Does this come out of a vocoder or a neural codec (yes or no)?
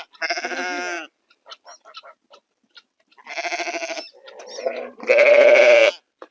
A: no